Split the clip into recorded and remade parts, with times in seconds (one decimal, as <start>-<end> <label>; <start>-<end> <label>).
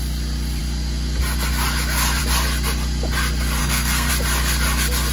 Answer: 0.0-3.6 recorded; 3.6-4.1 remade; 4.1-5.1 recorded